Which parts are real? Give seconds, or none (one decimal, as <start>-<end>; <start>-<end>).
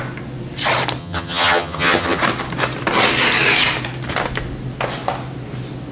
0.0-1.0; 2.2-5.9